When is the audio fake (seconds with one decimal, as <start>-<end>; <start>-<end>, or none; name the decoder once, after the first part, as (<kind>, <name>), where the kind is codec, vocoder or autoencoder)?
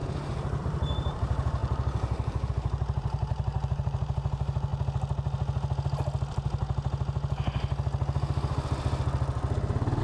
0.6-4.7 (vocoder, BigVGAN v2)